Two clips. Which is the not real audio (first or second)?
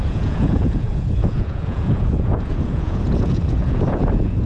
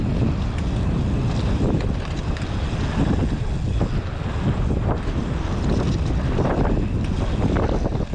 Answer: first